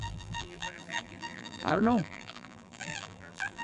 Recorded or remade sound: remade